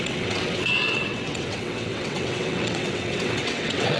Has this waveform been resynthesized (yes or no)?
yes